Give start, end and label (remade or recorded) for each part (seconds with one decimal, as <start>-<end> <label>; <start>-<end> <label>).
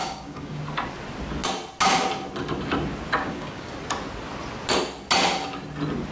0.0-0.6 remade; 0.6-3.2 recorded; 3.2-3.7 remade; 3.7-6.1 recorded